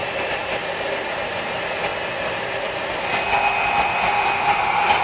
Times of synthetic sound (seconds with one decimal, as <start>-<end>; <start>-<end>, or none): none